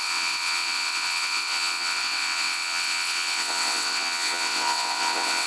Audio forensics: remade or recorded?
remade